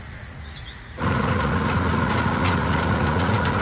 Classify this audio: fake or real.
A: fake